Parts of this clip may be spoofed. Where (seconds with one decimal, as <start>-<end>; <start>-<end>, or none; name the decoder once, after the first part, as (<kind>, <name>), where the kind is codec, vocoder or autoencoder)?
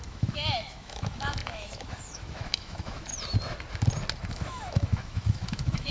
0.0-3.1 (autoencoder, DAC-VAE); 4.3-5.9